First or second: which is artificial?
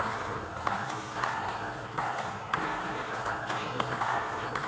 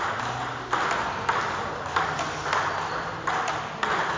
first